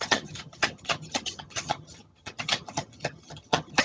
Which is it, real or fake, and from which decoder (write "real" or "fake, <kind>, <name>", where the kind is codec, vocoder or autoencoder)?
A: fake, vocoder, HiFi-GAN